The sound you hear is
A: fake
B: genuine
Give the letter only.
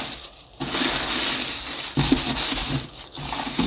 B